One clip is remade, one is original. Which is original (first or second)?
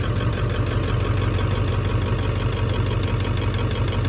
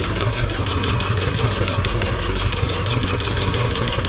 first